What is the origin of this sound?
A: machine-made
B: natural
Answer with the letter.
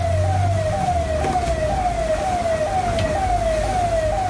B